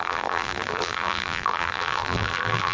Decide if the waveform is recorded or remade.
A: remade